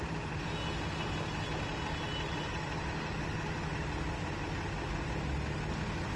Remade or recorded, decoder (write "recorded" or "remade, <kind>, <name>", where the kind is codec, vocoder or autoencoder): recorded